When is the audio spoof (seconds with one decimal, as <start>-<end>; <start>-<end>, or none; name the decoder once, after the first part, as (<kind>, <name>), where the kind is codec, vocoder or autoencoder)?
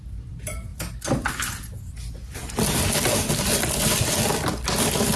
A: none